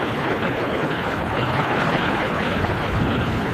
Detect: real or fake fake